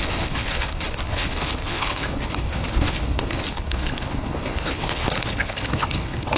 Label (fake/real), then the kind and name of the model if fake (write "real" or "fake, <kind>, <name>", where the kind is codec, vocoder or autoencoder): fake, codec, HILCodec